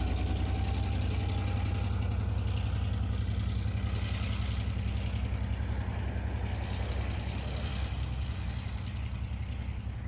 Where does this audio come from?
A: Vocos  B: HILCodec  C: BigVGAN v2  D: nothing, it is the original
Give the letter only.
D